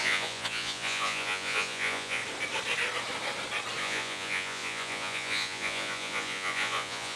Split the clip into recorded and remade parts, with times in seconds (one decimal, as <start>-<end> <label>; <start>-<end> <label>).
0.0-2.2 remade; 2.2-3.8 recorded; 3.8-7.2 remade